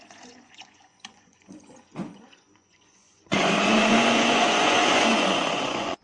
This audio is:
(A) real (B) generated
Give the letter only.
B